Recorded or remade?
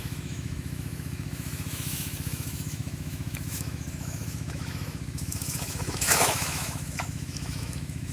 remade